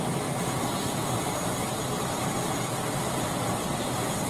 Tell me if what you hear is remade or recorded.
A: recorded